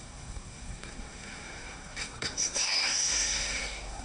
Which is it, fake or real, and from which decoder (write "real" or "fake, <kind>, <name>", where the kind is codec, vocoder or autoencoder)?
fake, codec, SNAC